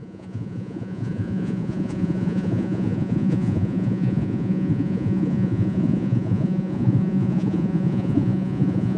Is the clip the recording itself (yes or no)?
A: no